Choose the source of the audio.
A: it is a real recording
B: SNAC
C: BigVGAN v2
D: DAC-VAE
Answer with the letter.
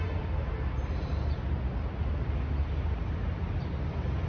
A